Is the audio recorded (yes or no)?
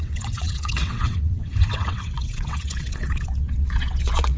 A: no